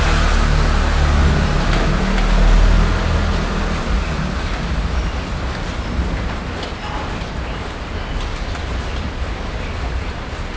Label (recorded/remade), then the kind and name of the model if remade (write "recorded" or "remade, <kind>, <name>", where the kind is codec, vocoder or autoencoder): recorded